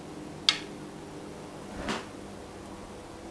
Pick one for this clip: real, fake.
real